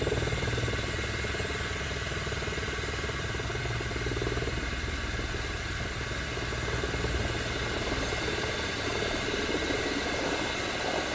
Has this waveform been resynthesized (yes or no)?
no